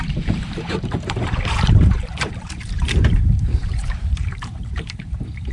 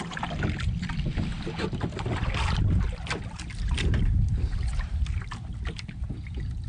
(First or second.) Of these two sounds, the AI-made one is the first